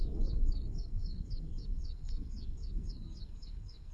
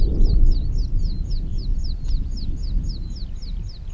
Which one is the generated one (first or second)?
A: first